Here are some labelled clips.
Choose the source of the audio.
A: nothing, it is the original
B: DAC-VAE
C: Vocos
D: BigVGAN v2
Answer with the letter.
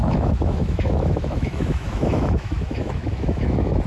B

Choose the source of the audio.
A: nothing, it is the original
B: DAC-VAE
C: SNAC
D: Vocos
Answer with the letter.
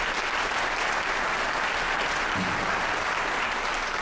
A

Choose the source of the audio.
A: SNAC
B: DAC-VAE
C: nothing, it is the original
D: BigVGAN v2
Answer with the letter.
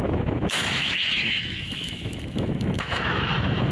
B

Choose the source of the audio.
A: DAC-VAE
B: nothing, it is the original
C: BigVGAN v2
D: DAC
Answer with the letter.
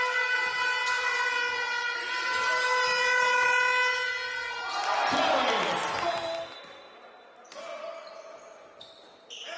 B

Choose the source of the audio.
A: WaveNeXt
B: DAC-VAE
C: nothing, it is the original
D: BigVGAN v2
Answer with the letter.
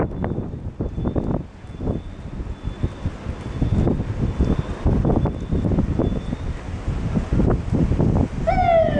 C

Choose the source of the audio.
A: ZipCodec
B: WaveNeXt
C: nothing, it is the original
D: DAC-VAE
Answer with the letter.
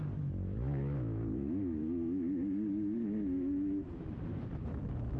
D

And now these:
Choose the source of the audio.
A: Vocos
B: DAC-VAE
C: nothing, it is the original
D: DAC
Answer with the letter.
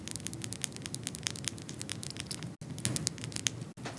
C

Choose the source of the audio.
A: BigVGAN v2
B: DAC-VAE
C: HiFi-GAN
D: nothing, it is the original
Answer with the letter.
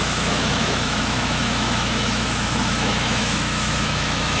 B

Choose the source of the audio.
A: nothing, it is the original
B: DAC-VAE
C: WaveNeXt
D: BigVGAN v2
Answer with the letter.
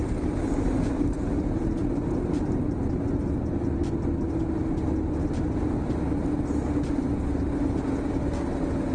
A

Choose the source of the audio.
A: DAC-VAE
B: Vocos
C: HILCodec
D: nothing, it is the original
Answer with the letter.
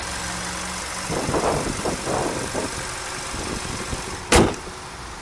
D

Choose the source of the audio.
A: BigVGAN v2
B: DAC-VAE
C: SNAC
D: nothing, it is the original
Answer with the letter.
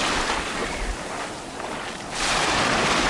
D